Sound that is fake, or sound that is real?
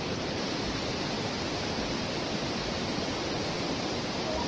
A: fake